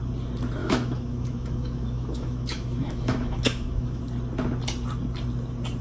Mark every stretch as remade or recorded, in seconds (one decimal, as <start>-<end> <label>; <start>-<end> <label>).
0.0-0.6 recorded; 0.6-4.0 remade; 4.0-5.8 recorded